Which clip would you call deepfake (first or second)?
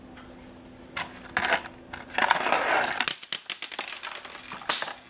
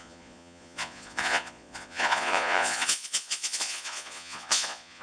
second